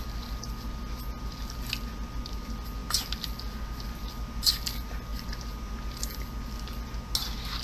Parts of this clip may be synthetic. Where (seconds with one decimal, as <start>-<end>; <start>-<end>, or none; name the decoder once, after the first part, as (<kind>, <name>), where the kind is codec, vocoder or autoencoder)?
none

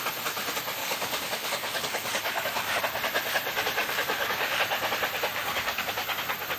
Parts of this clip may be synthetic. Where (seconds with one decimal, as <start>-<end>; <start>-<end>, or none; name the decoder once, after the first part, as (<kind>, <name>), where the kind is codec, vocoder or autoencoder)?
0.8-2.8 (codec, DAC); 3.8-4.6; 5.3-5.9

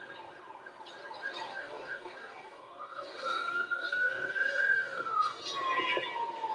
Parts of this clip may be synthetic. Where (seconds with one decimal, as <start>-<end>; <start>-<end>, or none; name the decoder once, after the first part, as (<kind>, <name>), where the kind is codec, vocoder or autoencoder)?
1.5-5.4 (codec, DAC)

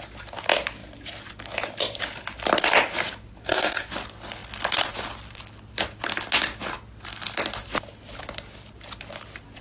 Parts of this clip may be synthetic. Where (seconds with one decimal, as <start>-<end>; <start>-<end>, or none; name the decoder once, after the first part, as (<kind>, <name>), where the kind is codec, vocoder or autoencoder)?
3.4-3.9 (codec, DAC)

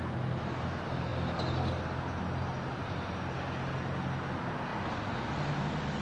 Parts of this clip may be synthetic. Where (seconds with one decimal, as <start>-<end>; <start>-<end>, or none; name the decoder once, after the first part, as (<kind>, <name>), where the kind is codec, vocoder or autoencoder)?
none